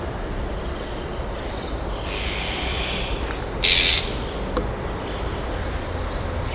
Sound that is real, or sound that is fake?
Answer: real